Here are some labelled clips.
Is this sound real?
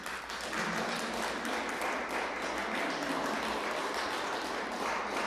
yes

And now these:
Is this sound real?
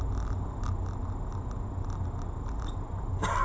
yes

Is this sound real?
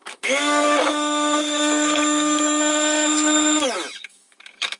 no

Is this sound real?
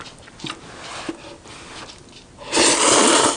yes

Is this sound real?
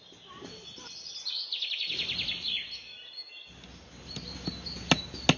yes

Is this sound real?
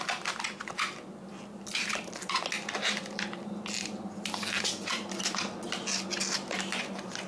yes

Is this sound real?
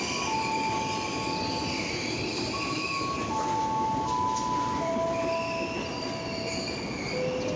yes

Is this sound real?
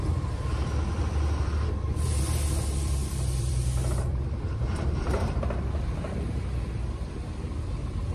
no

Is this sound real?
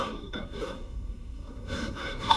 no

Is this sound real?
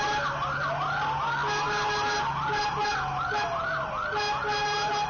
yes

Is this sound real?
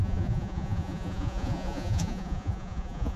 no